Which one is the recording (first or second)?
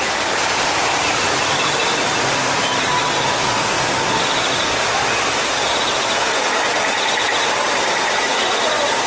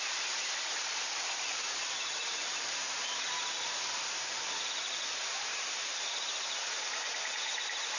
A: first